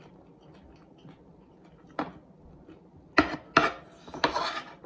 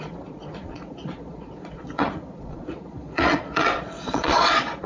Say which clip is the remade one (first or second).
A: second